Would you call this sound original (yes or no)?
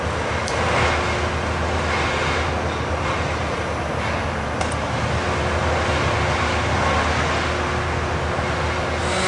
yes